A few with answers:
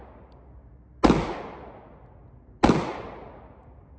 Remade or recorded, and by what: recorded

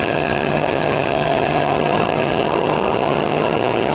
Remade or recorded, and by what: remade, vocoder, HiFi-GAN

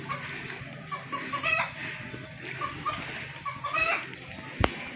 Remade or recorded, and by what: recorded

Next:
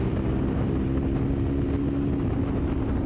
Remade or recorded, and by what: recorded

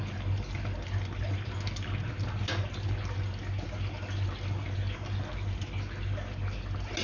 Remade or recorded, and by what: recorded